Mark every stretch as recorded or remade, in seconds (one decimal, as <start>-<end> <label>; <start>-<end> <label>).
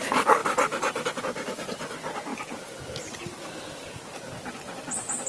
0.0-0.4 recorded; 0.4-1.2 remade; 1.2-5.3 recorded